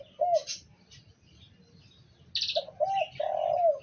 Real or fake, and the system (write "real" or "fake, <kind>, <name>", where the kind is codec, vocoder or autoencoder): real